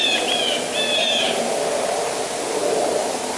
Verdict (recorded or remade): recorded